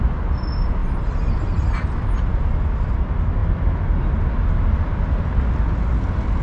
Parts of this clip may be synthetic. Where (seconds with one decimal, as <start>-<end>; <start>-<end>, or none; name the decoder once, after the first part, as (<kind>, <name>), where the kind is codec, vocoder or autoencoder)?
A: none